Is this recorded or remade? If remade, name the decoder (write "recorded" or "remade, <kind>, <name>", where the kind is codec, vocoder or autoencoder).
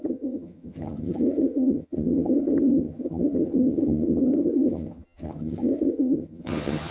remade, vocoder, HiFi-GAN